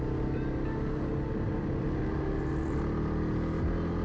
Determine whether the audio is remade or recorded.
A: recorded